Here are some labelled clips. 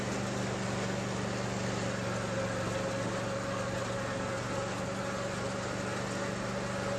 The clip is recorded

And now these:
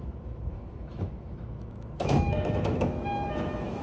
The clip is remade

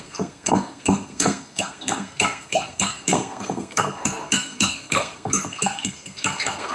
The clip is remade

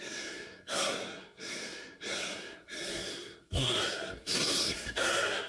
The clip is remade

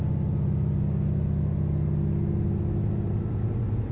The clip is recorded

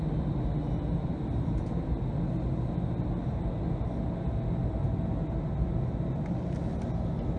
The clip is recorded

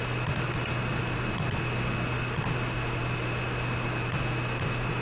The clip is recorded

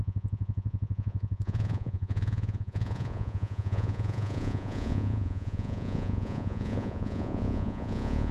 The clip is remade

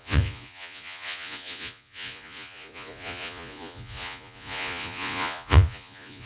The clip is remade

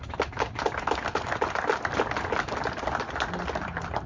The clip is recorded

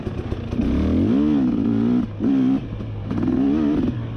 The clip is recorded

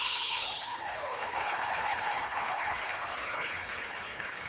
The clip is remade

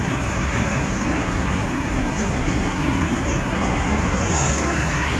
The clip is remade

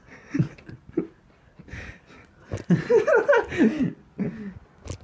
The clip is recorded